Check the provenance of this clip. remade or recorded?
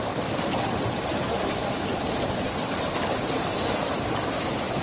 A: recorded